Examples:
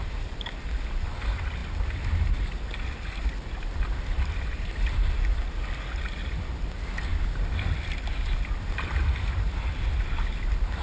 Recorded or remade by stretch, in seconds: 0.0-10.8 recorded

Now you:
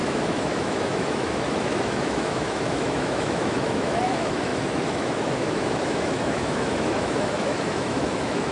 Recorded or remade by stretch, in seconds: 0.0-8.5 remade

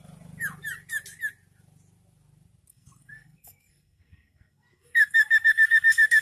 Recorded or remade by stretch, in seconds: 0.0-2.7 recorded; 2.7-6.2 remade

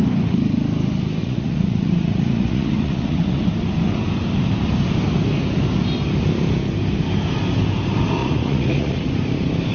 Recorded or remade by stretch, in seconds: 0.0-1.2 recorded; 1.2-3.4 remade; 3.4-8.2 recorded; 8.2-9.1 remade; 9.1-9.7 recorded